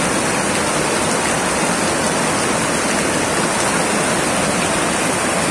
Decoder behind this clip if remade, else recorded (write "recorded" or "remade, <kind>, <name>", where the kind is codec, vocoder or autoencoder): recorded